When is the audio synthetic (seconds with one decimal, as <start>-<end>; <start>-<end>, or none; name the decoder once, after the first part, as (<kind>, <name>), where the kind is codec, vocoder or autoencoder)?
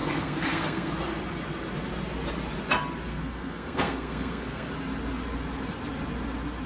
0.0-0.9 (codec, SNAC); 3.1-4.7